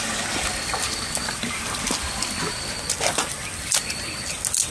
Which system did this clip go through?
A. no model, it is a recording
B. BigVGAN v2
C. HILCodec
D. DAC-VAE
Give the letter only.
A